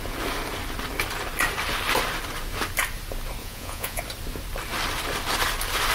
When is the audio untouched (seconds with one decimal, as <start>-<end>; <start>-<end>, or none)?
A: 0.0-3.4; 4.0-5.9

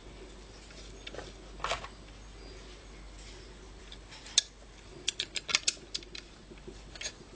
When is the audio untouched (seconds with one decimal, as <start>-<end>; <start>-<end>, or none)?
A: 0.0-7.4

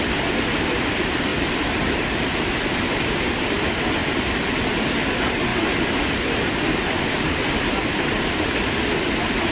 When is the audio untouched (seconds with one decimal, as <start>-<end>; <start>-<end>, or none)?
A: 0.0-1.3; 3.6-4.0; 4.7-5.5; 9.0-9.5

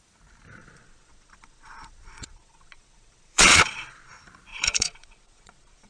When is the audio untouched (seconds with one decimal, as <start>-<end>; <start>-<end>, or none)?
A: 0.0-0.6; 4.1-4.5